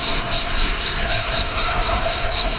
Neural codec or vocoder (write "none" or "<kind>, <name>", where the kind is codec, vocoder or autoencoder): codec, SNAC